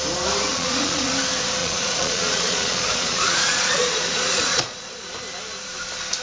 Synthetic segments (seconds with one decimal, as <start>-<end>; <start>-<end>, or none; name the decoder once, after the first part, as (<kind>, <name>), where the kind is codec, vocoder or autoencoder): 0.5-1.1 (vocoder, Vocos); 1.6-5.1